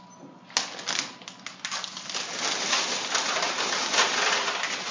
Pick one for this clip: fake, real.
real